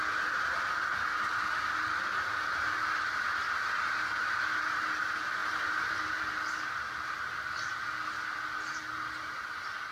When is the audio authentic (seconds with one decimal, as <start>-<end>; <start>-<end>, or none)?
0.0-9.9